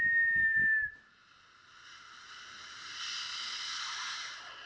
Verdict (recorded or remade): recorded